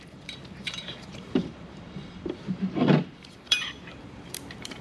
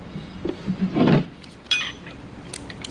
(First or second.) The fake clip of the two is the first